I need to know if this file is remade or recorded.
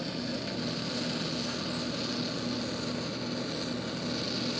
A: recorded